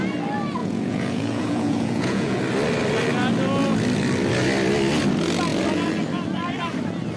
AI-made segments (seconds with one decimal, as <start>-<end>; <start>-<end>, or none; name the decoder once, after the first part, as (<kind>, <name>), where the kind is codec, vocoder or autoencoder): 0.6-2.4 (vocoder, Vocos)